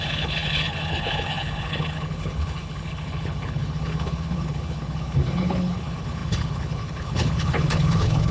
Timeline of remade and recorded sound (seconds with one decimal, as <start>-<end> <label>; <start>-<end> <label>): 0.0-8.3 remade